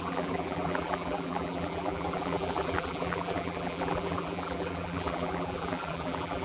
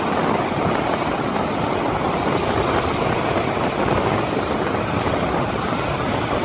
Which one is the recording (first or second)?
second